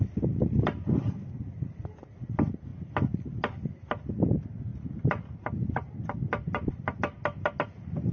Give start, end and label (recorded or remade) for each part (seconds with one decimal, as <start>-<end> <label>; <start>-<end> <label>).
0.0-8.1 recorded